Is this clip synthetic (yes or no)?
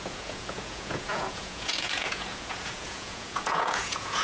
yes